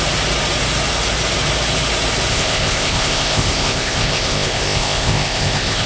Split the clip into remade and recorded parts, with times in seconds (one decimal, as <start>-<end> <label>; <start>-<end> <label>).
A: 0.0-2.3 recorded; 2.3-5.9 remade